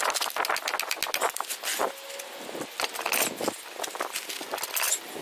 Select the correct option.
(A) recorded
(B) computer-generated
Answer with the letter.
A